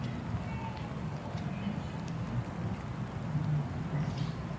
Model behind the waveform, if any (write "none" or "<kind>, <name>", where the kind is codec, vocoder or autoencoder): none